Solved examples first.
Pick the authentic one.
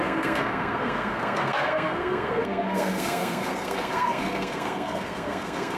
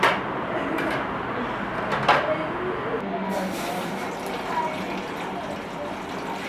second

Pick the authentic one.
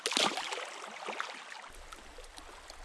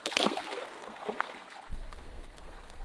first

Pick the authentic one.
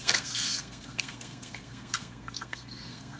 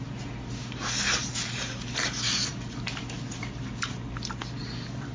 second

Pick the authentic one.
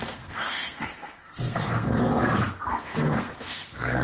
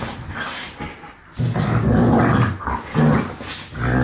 second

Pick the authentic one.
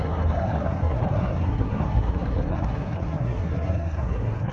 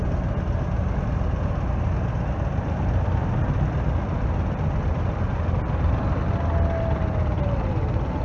second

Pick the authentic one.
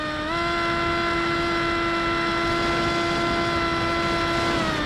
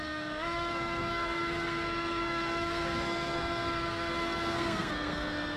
first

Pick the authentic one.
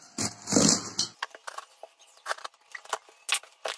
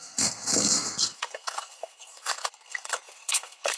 first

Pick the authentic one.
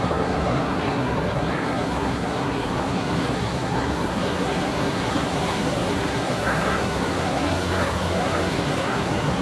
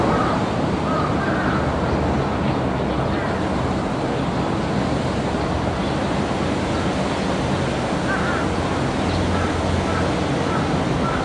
second